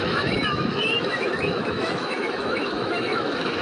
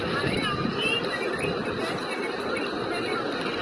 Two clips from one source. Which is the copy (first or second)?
first